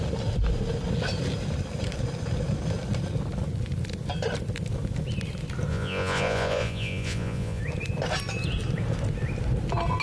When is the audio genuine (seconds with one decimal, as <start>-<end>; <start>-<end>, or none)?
0.0-5.7; 7.6-10.0